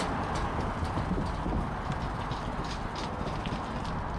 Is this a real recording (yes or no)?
yes